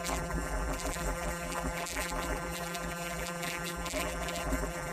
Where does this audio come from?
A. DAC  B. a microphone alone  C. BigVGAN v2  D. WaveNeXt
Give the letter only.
C